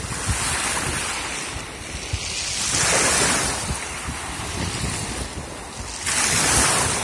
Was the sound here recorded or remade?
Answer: recorded